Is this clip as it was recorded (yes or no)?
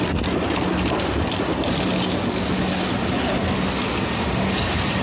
yes